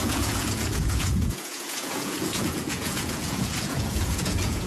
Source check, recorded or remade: remade